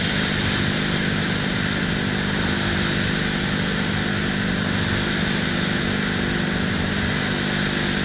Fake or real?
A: real